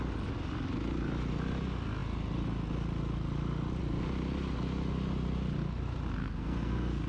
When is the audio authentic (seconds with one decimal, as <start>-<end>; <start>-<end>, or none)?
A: 0.0-6.2